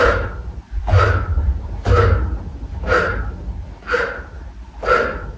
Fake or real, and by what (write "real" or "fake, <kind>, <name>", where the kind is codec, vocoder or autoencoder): real